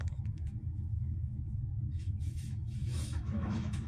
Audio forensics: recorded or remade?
remade